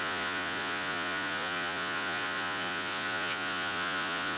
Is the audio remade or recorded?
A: remade